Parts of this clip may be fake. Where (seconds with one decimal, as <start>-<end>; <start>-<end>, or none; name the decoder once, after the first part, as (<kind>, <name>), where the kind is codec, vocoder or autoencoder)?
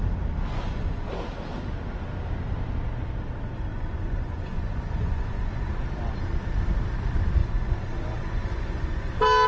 0.5-1.1 (vocoder, Vocos); 3.7-5.7; 7.4-9.1